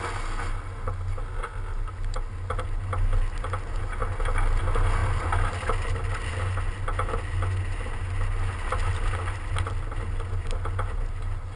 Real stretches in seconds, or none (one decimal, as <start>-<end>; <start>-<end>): 0.0-11.6